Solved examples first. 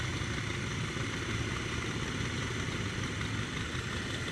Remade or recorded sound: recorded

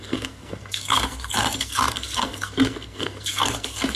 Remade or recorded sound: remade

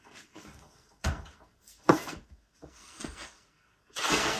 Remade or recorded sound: remade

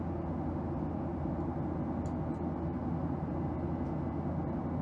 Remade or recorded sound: recorded